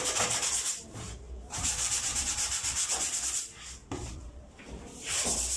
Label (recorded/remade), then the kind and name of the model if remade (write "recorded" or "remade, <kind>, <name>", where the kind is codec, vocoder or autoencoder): remade, vocoder, BigVGAN v2